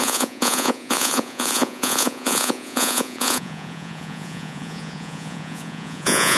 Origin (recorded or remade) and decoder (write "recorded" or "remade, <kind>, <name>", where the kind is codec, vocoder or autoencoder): remade, vocoder, Vocos